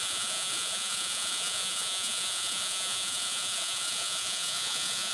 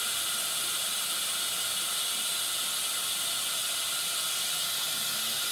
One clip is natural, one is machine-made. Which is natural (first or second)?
second